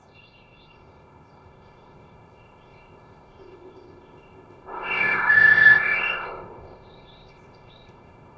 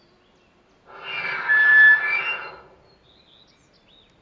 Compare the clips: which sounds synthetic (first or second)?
first